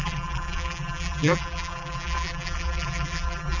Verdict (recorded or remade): remade